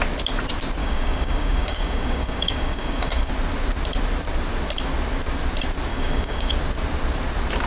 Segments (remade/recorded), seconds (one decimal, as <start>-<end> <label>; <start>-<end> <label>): 0.0-0.8 recorded; 0.8-3.3 remade; 3.3-5.9 recorded; 5.9-6.5 remade; 6.5-7.7 recorded